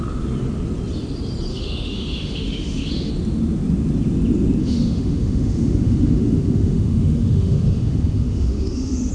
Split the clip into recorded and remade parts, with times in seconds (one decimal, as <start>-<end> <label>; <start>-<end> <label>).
0.0-1.5 recorded; 1.5-3.1 remade; 3.1-4.6 recorded; 4.6-9.1 remade